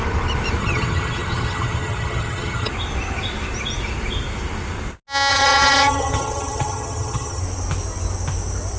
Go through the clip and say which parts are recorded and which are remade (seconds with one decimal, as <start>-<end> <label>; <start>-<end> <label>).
0.0-0.6 recorded; 0.6-2.7 remade; 2.7-5.3 recorded; 5.3-7.4 remade; 7.4-8.8 recorded

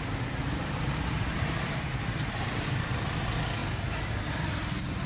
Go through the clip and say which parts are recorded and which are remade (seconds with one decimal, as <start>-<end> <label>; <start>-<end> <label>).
0.0-0.6 recorded; 0.6-2.9 remade; 2.9-3.6 recorded; 3.6-5.1 remade

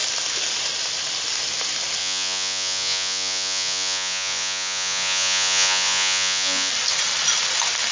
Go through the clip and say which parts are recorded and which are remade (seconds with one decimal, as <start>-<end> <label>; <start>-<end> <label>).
0.0-2.0 recorded; 2.0-6.7 remade; 6.7-7.9 recorded

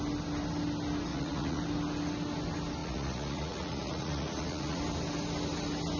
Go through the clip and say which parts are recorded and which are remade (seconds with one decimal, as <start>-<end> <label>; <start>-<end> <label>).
0.0-1.1 recorded; 1.1-1.6 remade; 1.6-2.8 recorded; 2.8-4.8 remade; 4.8-6.0 recorded

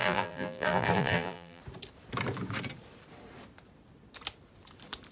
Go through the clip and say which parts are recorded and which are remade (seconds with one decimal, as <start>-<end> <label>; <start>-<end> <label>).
0.0-1.6 remade; 1.6-5.1 recorded

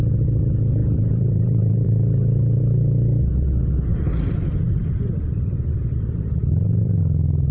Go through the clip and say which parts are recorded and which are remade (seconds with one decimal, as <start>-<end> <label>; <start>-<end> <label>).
0.0-0.8 recorded; 0.8-2.6 remade; 2.6-3.9 recorded; 3.9-7.0 remade; 7.0-7.5 recorded

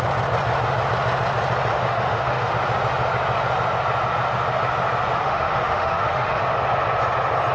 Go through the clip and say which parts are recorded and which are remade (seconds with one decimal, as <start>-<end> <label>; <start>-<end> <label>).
0.0-1.7 recorded; 1.7-2.5 remade; 2.5-5.2 recorded; 5.2-6.4 remade; 6.4-7.5 recorded

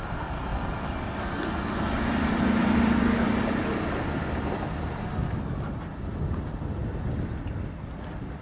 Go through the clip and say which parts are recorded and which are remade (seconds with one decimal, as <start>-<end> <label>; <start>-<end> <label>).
0.0-0.5 recorded; 0.5-3.0 remade; 3.0-6.8 recorded; 6.8-7.5 remade; 7.5-8.4 recorded